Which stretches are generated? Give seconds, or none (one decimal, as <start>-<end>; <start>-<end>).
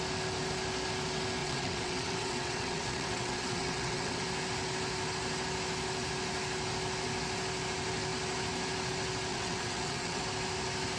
1.4-4.2; 9.3-10.2